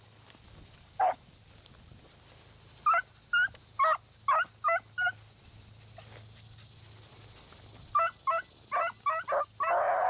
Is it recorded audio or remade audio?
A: recorded